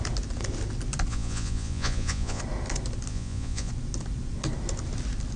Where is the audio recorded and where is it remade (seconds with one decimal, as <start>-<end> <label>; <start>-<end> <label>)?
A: 0.0-1.1 recorded; 1.1-2.4 remade; 2.4-3.1 recorded; 3.1-3.7 remade; 3.7-5.4 recorded